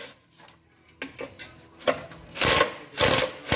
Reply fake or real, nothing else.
real